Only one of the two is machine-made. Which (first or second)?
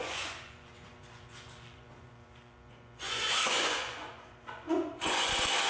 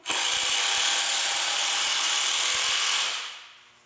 first